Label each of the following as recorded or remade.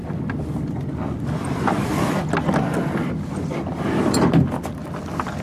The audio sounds recorded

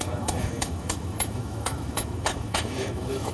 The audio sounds remade